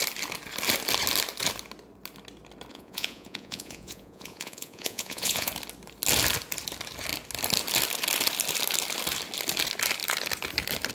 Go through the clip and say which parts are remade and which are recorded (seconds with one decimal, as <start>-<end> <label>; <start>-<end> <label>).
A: 0.0-2.7 recorded; 2.7-5.5 remade; 5.5-10.9 recorded